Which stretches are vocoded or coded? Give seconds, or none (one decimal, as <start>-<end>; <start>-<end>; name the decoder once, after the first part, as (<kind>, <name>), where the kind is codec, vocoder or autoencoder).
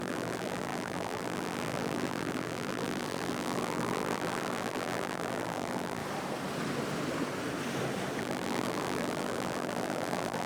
0.0-6.0 (vocoder, BigVGAN v2); 8.2-10.5